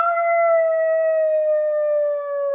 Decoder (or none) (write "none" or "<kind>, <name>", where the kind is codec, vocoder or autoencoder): none